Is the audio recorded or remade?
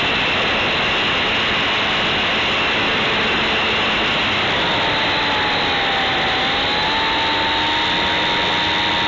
recorded